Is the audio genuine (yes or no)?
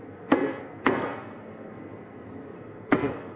no